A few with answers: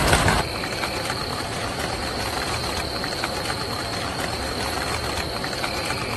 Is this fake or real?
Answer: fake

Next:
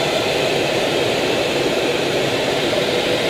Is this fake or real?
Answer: fake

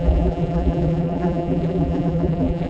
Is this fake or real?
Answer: fake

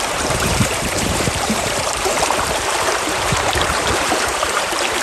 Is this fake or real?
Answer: fake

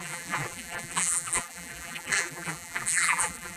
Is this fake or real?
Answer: fake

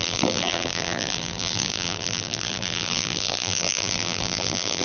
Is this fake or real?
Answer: fake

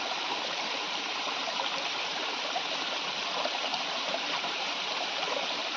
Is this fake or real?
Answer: fake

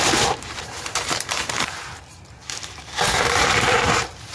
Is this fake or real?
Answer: fake